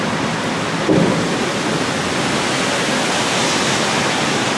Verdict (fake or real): real